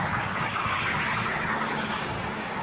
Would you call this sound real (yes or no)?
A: no